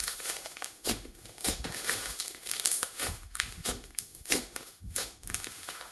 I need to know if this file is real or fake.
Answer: fake